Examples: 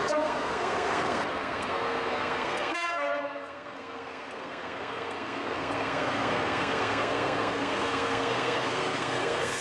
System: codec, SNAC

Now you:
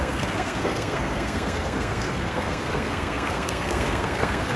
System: codec, SNAC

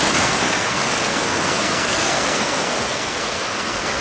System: codec, SNAC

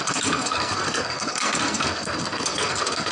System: codec, SNAC